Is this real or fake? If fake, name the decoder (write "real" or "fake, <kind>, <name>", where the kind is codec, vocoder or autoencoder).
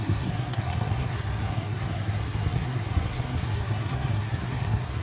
fake, codec, SNAC